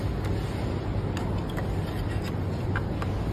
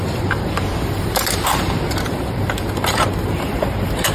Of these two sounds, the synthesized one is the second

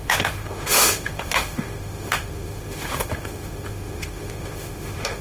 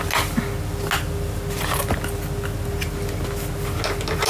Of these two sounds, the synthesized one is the first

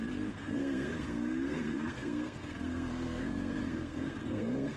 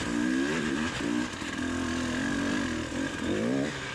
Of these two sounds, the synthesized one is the first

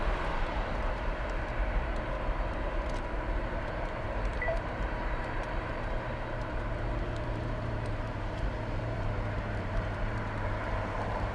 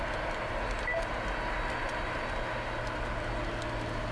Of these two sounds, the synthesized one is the first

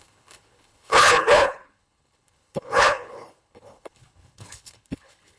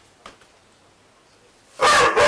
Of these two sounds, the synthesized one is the first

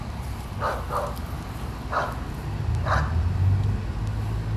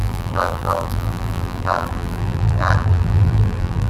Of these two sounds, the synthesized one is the second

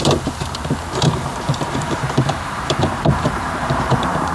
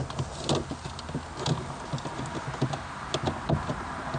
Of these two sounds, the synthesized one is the first